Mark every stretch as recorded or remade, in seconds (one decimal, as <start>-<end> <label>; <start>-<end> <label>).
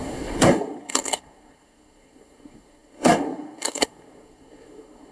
0.0-5.1 remade